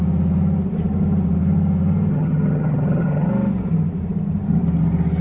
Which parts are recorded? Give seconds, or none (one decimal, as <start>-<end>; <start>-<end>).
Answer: 0.0-2.1; 3.3-5.2